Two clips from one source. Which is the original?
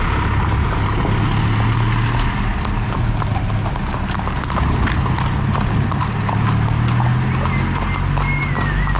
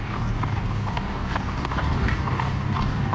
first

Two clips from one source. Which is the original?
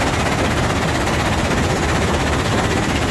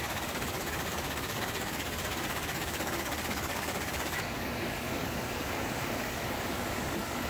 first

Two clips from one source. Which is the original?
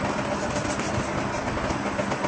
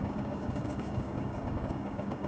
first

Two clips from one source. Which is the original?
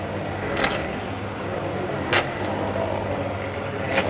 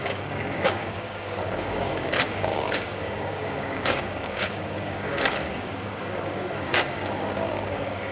first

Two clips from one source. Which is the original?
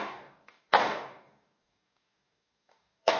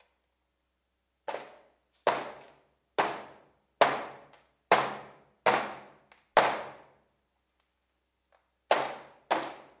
second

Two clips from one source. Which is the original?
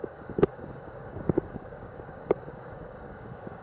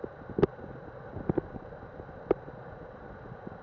second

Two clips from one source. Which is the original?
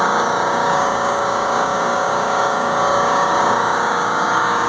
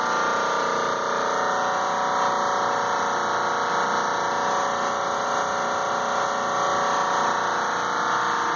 second